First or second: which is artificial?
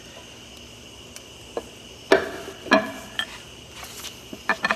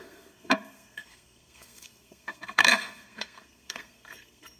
second